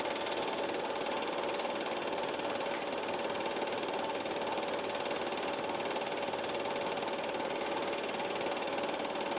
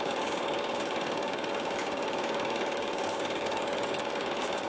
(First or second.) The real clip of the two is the first